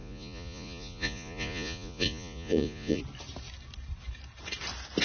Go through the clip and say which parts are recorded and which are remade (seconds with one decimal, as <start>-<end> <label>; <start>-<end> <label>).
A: 0.0-3.0 remade; 3.0-5.0 recorded